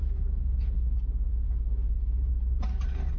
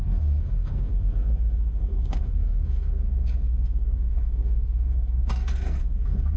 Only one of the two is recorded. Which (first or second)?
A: first